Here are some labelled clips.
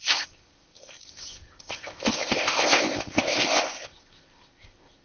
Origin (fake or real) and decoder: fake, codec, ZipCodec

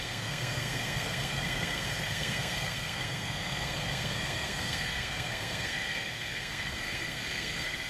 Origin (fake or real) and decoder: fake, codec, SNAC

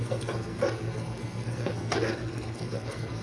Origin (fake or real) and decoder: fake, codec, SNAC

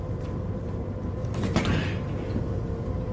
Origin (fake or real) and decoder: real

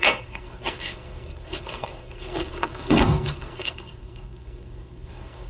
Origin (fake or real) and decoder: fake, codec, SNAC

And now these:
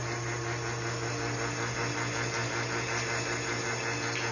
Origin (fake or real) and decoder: real